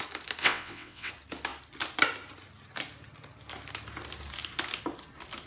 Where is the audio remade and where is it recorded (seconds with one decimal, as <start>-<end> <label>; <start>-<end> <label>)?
0.0-0.4 recorded; 0.4-1.1 remade; 1.1-5.5 recorded

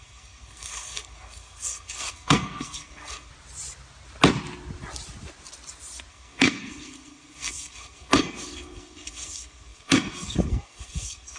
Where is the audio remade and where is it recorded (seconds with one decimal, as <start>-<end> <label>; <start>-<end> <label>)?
0.0-3.3 remade; 3.3-6.1 recorded; 6.1-11.4 remade

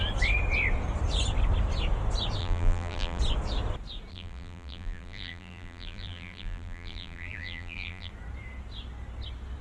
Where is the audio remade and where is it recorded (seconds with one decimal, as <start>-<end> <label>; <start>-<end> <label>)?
0.0-2.4 recorded; 2.4-3.2 remade; 3.2-4.1 recorded; 4.1-8.1 remade; 8.1-9.6 recorded

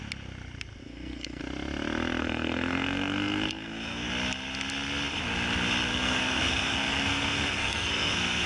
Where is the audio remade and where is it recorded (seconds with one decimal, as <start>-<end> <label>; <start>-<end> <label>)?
0.0-0.8 recorded; 0.8-1.4 remade; 1.4-2.2 recorded; 2.2-4.1 remade; 4.1-5.9 recorded; 5.9-8.5 remade

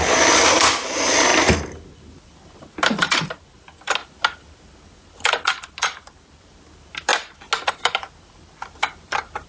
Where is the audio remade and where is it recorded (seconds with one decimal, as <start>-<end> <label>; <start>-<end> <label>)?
0.0-1.3 remade; 1.3-2.1 recorded; 2.1-4.0 remade; 4.0-5.3 recorded; 5.3-7.1 remade; 7.1-7.7 recorded; 7.7-9.5 remade

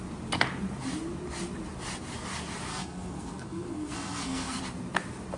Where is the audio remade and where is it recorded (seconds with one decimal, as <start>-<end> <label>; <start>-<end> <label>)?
0.0-2.7 recorded; 2.7-4.6 remade; 4.6-5.4 recorded